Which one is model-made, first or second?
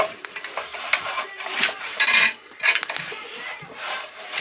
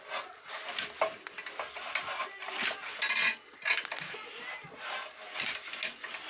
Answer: first